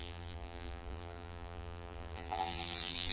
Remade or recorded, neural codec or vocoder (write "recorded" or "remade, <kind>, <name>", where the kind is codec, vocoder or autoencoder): remade, vocoder, BigVGAN v2